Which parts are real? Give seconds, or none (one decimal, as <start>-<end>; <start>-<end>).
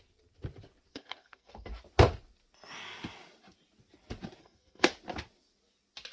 0.0-0.9; 1.7-4.4; 4.9-6.1